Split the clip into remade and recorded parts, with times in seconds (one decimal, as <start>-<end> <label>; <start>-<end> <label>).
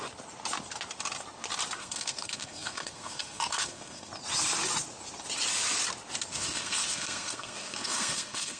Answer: 0.0-1.8 recorded; 1.8-4.1 remade; 4.1-6.3 recorded; 6.3-8.6 remade